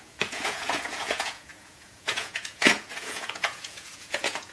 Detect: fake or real fake